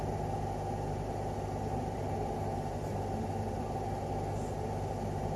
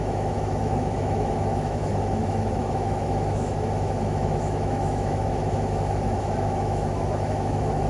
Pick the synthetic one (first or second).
second